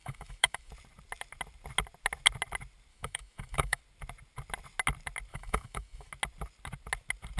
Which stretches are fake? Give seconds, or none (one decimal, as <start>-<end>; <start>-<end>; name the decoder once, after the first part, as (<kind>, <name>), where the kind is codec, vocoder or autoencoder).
0.0-0.7 (autoencoder, DAC-VAE); 2.9-3.8; 5.3-6.1

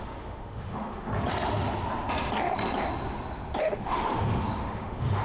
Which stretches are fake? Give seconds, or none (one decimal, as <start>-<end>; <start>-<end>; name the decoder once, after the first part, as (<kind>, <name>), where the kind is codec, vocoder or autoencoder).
0.0-1.1 (autoencoder, DAC-VAE); 3.6-5.2

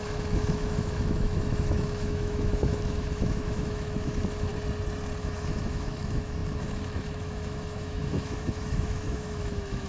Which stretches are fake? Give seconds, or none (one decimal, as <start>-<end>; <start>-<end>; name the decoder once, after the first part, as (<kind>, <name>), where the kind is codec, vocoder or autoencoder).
0.0-4.5 (autoencoder, DAC-VAE); 5.2-9.9

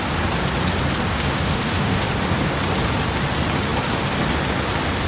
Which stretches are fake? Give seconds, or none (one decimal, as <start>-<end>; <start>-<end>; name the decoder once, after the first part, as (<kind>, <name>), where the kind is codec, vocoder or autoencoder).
1.1-2.1 (autoencoder, DAC-VAE)

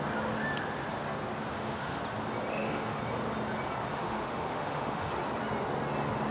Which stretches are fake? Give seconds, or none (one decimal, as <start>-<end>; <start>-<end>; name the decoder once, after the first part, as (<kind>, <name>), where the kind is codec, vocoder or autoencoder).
1.5-2.0 (autoencoder, DAC-VAE); 2.5-3.0; 3.9-5.1

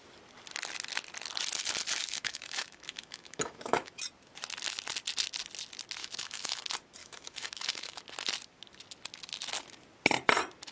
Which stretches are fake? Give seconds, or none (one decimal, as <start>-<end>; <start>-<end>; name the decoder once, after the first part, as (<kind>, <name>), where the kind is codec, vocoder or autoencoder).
2.0-3.9 (autoencoder, DAC-VAE); 6.0-6.6; 7.0-8.0